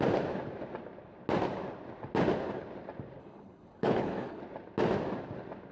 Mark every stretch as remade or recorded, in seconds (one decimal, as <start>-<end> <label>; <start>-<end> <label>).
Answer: 0.0-3.2 recorded; 3.2-4.4 remade; 4.4-5.7 recorded